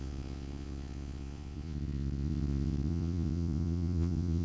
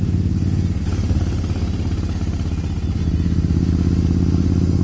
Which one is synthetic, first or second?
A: first